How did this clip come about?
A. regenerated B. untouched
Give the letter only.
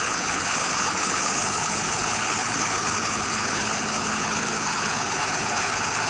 A